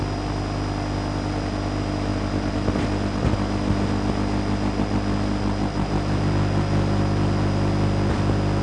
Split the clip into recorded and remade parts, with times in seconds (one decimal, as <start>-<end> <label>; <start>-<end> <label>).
0.0-8.6 recorded